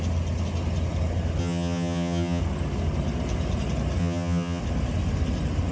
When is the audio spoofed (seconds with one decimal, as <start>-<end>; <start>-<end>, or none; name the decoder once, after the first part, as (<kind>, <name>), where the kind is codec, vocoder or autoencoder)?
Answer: 1.4-2.4 (vocoder, HiFi-GAN); 4.0-4.6